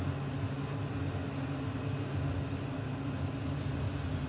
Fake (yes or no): no